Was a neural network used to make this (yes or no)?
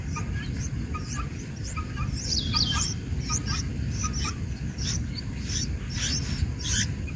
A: yes